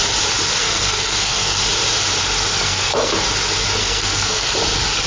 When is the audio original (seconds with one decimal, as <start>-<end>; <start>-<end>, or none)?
0.0-0.6; 1.6-2.5; 3.1-3.8; 4.5-5.1